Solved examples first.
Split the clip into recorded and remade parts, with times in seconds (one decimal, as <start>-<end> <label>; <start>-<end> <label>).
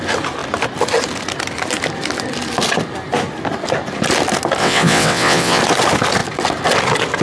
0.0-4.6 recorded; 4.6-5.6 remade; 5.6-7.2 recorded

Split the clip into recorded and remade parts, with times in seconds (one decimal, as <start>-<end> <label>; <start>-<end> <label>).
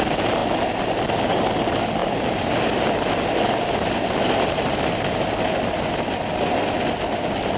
0.0-2.0 recorded; 2.0-2.6 remade; 2.6-7.6 recorded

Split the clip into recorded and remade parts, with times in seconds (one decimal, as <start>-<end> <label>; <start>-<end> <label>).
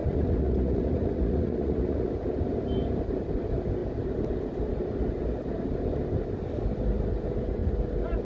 0.0-2.1 remade; 2.1-8.2 recorded